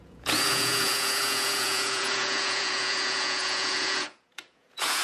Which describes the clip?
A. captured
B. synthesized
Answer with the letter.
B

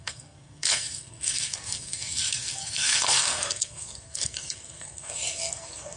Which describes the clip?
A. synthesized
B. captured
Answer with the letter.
A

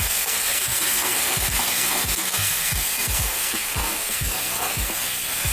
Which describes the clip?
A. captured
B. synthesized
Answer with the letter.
B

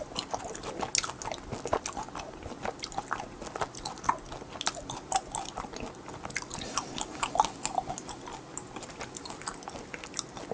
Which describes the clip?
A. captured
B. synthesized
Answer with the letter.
A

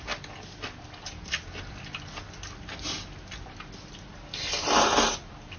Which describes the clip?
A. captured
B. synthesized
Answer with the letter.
A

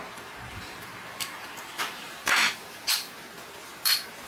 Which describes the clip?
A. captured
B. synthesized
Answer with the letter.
B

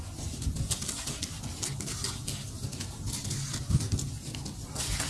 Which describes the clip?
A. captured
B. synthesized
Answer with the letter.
A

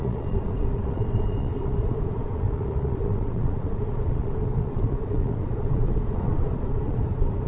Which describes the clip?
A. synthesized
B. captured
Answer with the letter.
A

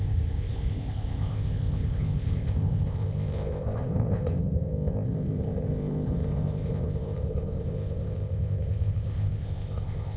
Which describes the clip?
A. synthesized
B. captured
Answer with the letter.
A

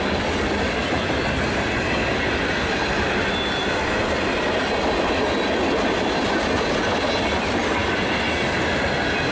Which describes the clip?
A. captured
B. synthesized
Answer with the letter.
A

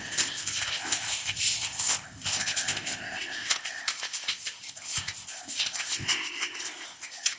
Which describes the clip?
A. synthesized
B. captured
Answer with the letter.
A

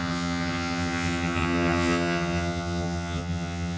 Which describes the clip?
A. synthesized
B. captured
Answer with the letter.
A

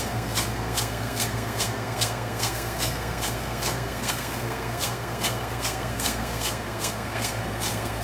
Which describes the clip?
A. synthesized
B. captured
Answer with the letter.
A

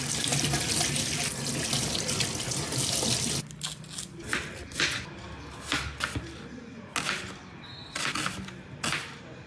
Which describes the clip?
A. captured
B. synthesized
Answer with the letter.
A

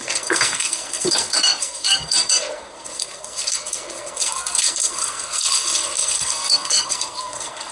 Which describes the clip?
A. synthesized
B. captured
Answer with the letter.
A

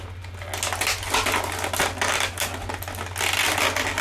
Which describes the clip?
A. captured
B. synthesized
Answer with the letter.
A